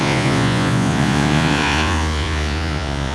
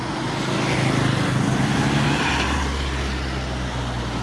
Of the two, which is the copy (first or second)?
first